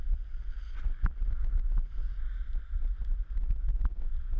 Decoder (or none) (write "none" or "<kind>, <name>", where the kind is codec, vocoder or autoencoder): none